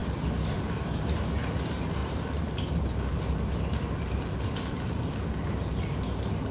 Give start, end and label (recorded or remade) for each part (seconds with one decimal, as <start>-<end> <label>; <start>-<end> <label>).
0.0-1.3 remade; 1.3-2.0 recorded; 2.0-2.7 remade; 2.7-6.5 recorded